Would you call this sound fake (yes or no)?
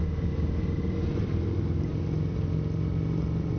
no